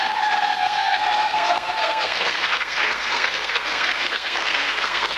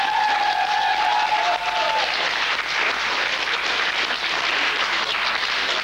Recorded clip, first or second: second